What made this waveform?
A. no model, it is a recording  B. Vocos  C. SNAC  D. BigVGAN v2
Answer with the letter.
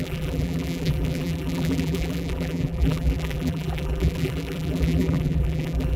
D